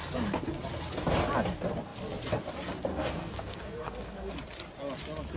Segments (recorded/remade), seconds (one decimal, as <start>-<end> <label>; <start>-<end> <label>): 0.0-2.9 recorded; 2.9-4.3 remade; 4.3-5.4 recorded